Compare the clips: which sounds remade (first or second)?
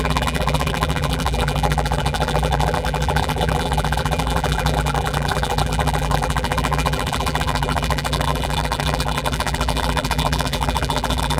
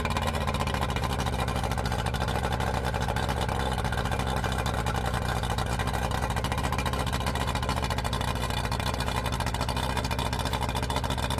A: first